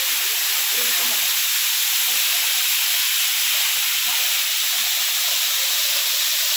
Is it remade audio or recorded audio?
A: recorded